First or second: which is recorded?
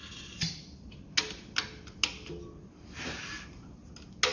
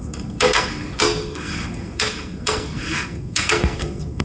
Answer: first